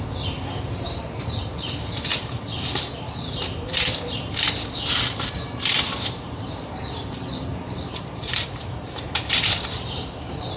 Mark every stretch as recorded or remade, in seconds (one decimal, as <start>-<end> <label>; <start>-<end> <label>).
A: 0.0-10.6 remade